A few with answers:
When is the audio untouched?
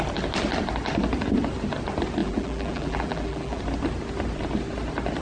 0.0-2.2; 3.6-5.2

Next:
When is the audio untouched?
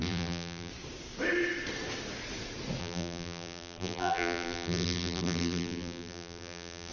0.7-2.8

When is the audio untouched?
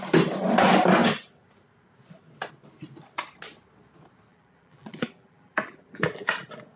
0.0-4.3; 6.3-6.8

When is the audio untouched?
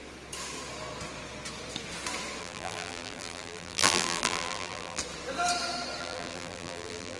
0.0-2.4; 5.0-6.0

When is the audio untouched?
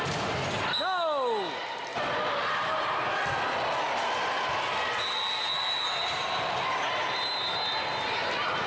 0.0-8.7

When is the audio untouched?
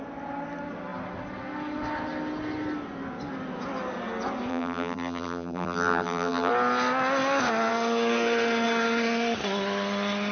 0.0-4.5; 6.5-10.3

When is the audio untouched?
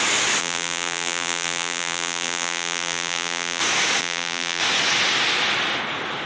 0.0-0.4; 3.6-4.0; 4.6-6.3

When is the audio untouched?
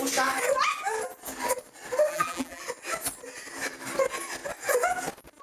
0.0-2.1; 2.6-5.4